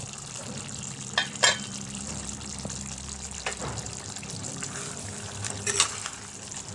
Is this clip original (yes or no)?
no